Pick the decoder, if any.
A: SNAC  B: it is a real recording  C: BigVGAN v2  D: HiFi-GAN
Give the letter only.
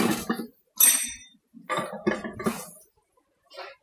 B